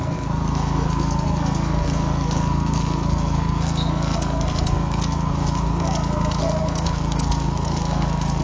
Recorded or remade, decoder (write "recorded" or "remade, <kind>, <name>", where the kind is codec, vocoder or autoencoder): remade, codec, SNAC